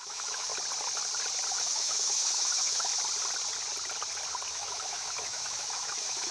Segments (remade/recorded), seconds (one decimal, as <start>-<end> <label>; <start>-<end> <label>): 0.0-0.5 remade; 0.5-1.5 recorded; 1.5-2.9 remade; 2.9-4.5 recorded; 4.5-6.3 remade